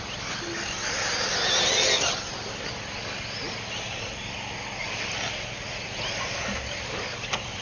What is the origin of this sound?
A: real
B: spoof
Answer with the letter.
A